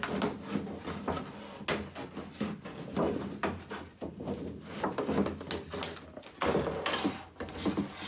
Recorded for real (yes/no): yes